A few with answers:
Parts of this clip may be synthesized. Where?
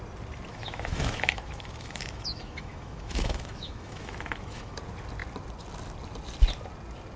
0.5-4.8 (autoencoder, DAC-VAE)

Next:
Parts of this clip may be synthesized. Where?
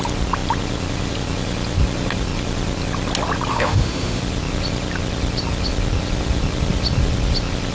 3.5-4.2 (autoencoder, DAC-VAE)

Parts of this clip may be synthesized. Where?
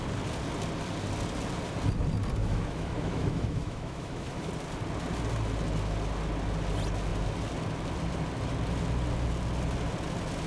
2.4-4.5 (autoencoder, DAC-VAE)